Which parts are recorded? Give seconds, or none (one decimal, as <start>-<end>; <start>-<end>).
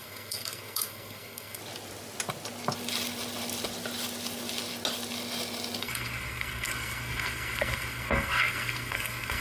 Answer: 1.6-5.8